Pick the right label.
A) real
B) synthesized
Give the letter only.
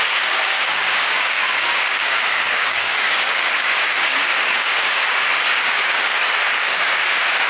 B